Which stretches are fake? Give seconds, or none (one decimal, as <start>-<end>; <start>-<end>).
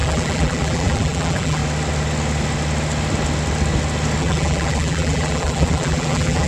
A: 0.0-1.6; 4.2-6.5